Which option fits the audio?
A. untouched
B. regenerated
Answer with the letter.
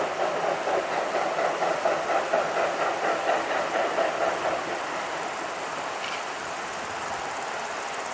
A